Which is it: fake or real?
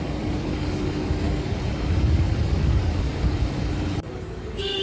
fake